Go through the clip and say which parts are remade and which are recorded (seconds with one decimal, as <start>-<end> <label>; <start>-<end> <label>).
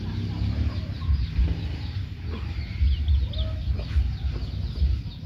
0.0-5.3 recorded